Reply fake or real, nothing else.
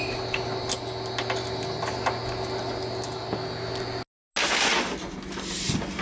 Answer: real